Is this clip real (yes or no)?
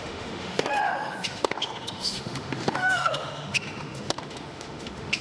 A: no